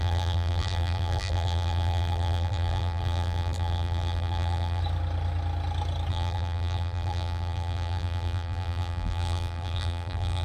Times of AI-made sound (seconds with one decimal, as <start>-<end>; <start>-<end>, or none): 0.0-4.8; 6.1-10.4